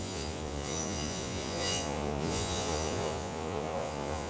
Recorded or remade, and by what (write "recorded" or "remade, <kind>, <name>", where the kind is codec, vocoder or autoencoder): remade, vocoder, Vocos